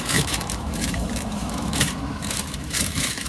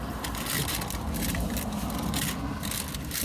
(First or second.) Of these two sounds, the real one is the second